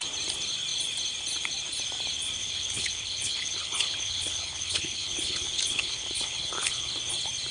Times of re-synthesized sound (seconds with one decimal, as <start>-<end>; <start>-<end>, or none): 2.4-6.9